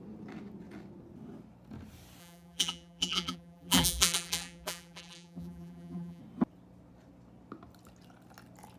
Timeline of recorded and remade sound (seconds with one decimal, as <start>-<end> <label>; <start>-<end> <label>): 0.0-2.2 recorded; 2.2-6.2 remade; 6.2-8.8 recorded